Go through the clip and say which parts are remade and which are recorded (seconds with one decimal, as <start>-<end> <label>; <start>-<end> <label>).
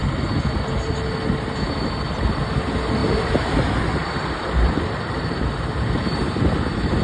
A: 0.0-7.0 recorded